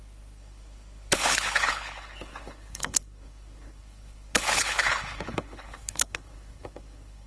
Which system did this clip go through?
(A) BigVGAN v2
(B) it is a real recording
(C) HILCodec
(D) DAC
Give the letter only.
C